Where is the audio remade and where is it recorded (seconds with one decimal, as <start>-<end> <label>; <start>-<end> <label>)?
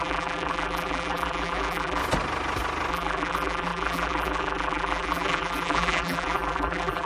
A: 0.0-2.0 remade; 2.0-2.9 recorded; 2.9-7.1 remade